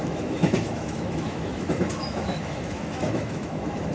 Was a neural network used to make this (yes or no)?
yes